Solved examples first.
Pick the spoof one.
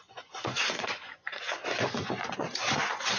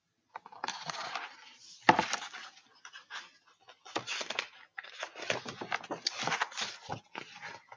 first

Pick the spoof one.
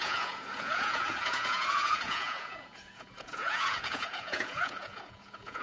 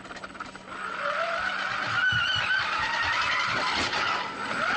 first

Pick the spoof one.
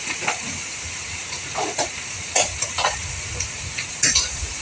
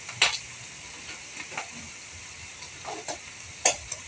first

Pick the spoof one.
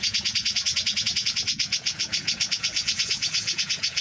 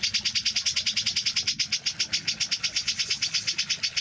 first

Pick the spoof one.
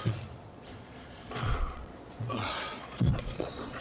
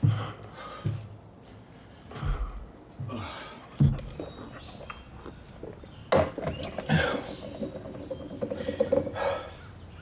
first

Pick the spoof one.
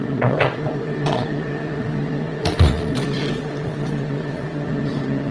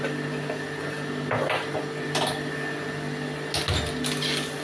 first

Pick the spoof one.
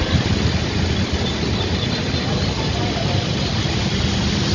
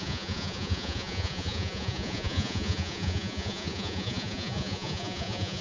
second